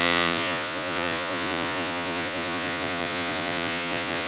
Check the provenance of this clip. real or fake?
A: fake